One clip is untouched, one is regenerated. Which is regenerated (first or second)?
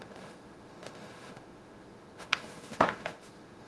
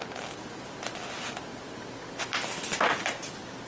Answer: first